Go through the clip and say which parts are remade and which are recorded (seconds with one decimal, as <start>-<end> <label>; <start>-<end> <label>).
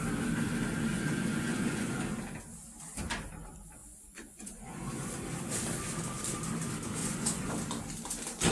0.0-0.9 recorded; 0.9-1.9 remade; 1.9-3.8 recorded; 3.8-5.1 remade; 5.1-7.0 recorded; 7.0-7.5 remade; 7.5-8.5 recorded